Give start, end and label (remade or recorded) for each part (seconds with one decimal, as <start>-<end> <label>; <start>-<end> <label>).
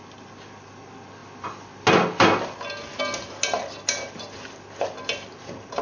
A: 0.0-5.8 recorded